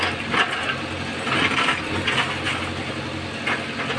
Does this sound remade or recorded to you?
recorded